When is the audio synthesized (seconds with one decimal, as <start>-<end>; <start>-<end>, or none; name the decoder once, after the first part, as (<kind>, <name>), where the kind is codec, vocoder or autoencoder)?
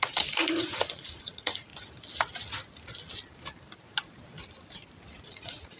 0.0-1.7 (vocoder, Vocos); 5.2-5.8